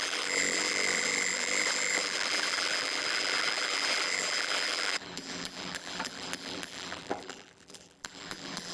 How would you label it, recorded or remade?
remade